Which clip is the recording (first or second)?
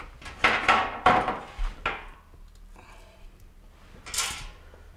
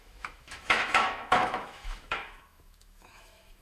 first